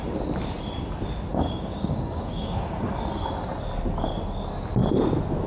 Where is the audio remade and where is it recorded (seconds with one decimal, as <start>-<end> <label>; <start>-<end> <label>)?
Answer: 0.0-1.3 recorded; 1.3-2.9 remade; 2.9-5.5 recorded